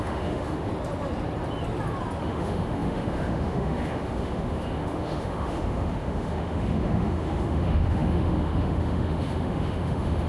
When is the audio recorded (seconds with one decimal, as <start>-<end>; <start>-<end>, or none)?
0.7-2.2